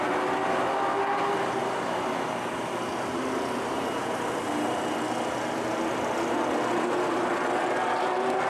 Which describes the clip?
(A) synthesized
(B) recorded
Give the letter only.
B